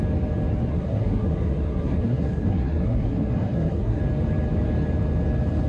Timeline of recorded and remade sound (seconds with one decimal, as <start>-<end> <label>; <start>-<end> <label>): 0.0-0.7 recorded; 0.7-4.0 remade; 4.0-5.7 recorded